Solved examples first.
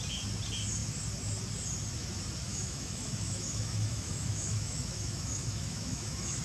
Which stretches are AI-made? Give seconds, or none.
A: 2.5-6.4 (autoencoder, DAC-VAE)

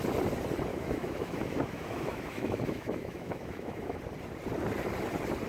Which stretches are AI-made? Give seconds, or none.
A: 0.7-4.0 (autoencoder, DAC-VAE)